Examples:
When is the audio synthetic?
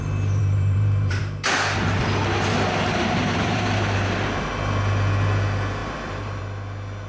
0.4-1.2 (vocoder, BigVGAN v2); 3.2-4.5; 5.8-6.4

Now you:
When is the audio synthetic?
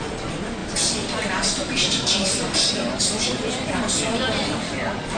0.6-3.7 (vocoder, BigVGAN v2)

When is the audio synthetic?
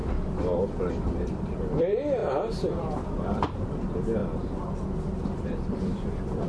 0.9-2.2 (vocoder, BigVGAN v2); 2.8-4.2; 5.4-6.5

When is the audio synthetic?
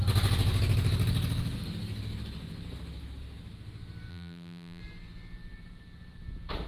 4.1-4.8 (vocoder, BigVGAN v2)